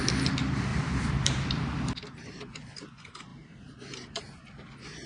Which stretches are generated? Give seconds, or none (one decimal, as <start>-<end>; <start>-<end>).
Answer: 0.7-2.9; 3.3-4.2

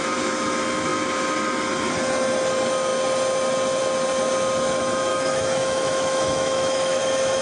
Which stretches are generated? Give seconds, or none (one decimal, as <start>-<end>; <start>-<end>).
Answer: 5.1-7.0